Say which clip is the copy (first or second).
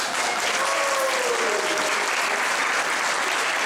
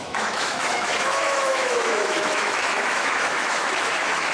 second